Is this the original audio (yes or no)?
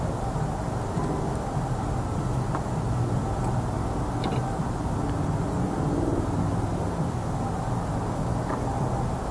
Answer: yes